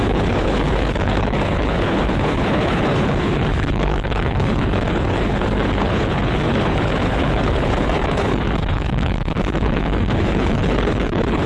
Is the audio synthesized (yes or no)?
yes